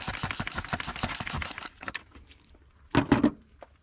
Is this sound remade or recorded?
recorded